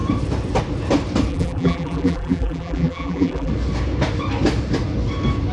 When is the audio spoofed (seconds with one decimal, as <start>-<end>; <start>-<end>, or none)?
1.3-3.5